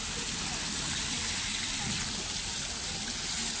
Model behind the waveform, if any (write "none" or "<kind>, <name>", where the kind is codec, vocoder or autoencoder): none